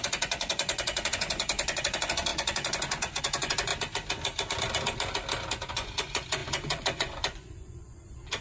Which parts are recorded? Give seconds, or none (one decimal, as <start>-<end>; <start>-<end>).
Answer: 3.7-5.7